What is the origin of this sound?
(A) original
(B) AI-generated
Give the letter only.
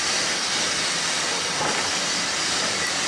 A